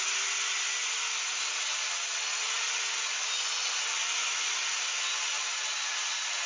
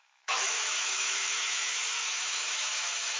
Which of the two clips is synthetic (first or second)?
second